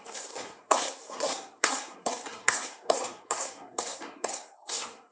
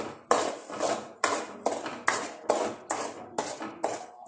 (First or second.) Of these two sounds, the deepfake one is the first